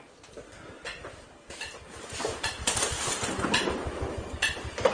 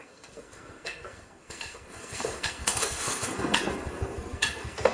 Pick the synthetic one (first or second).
second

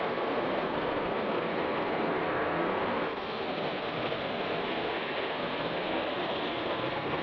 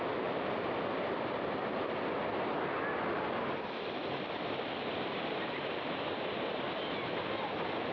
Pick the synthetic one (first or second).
first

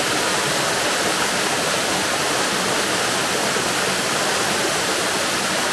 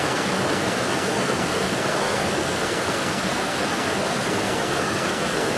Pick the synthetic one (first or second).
second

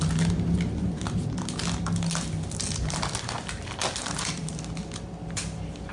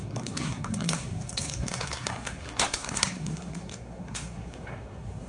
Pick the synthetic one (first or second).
second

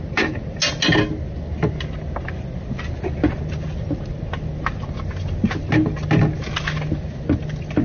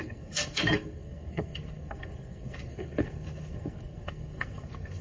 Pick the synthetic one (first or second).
second